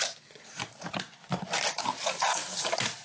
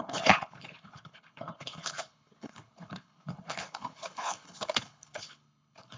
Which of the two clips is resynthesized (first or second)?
second